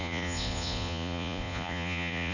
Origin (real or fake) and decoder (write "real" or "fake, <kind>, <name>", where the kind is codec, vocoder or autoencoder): fake, vocoder, Vocos